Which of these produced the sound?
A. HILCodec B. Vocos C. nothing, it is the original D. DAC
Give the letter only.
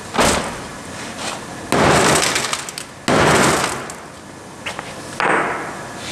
C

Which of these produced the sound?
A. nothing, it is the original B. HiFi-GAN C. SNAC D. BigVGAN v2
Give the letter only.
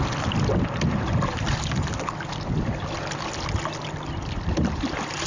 A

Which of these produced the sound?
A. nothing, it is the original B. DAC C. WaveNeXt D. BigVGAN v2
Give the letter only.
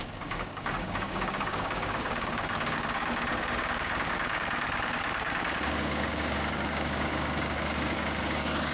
B